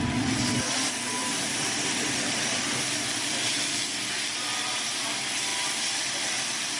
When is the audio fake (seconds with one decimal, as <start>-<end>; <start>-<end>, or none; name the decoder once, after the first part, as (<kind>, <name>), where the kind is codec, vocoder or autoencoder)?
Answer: 1.2-3.9 (vocoder, BigVGAN v2); 5.5-6.2